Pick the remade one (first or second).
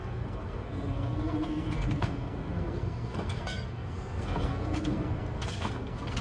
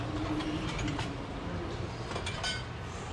first